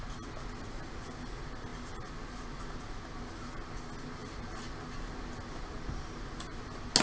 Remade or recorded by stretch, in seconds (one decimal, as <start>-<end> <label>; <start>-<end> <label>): 0.0-7.0 recorded